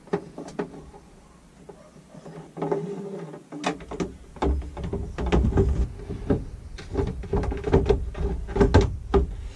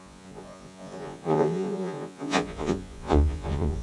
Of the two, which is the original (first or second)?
first